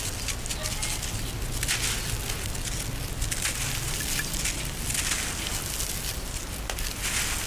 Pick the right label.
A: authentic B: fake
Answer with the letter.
A